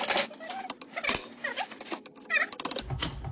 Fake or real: real